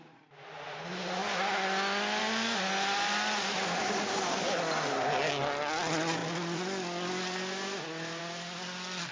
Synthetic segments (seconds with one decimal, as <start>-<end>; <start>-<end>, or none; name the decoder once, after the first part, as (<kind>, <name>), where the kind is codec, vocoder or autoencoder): none